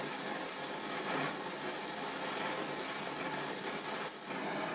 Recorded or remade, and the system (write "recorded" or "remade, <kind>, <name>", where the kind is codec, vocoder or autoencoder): recorded